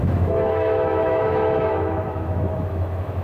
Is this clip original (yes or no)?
no